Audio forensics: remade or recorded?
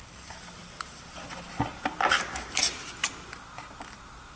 recorded